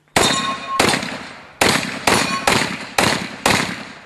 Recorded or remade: recorded